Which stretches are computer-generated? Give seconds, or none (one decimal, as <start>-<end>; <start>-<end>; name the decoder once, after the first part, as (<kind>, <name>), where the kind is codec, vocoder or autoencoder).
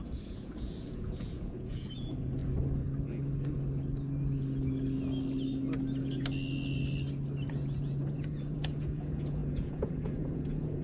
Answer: 0.0-2.4 (vocoder, Vocos); 7.5-10.8